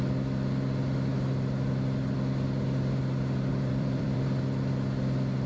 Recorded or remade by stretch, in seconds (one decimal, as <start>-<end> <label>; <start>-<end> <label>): 0.0-3.5 recorded; 3.5-4.4 remade; 4.4-5.5 recorded